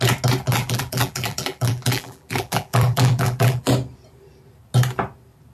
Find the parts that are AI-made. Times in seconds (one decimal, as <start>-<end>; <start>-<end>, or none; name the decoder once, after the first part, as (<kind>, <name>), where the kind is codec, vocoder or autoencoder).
0.4-3.7 (vocoder, BigVGAN v2)